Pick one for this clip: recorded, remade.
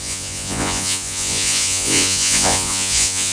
remade